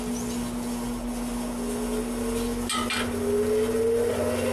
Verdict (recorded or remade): recorded